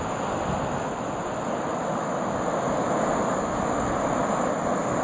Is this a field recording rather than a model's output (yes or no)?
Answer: yes